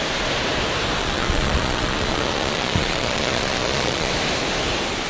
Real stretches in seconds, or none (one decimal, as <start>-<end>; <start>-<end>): 0.0-1.0; 4.1-5.1